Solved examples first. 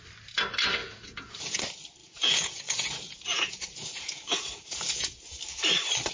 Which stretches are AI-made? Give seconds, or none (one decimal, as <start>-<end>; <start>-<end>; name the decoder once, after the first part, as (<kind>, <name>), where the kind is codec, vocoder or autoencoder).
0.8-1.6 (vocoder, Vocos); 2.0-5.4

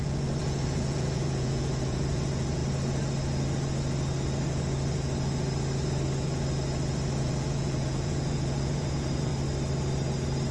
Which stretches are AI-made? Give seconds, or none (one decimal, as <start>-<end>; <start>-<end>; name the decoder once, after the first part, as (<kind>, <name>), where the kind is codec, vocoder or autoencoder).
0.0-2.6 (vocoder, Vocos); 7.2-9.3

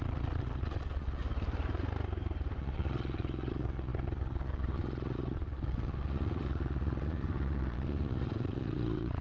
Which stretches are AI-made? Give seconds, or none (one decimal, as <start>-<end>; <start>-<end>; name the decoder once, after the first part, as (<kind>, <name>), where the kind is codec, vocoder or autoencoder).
0.0-1.2 (vocoder, Vocos); 2.6-9.2

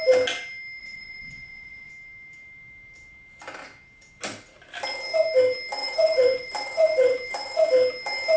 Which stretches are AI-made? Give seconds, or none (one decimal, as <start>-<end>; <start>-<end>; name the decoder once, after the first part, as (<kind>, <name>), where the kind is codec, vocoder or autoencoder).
0.8-1.9 (vocoder, Vocos); 5.8-7.7

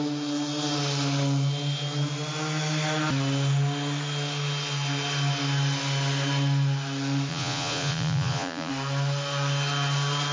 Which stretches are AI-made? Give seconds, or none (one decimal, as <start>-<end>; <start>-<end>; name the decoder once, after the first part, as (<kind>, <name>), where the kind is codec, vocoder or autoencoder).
7.3-8.7 (vocoder, Vocos)